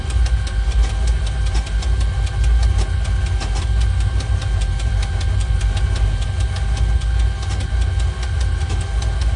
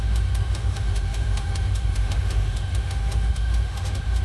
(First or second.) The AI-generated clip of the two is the second